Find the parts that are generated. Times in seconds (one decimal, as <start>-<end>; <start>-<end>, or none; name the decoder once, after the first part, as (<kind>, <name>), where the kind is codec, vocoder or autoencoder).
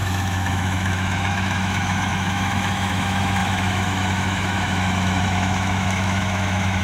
0.0-6.8 (autoencoder, DAC-VAE)